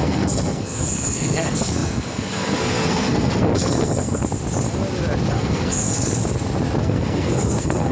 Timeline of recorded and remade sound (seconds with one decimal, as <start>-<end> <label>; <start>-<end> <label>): 0.0-4.2 remade; 4.2-5.3 recorded; 5.3-6.2 remade; 6.2-6.8 recorded; 6.8-7.9 remade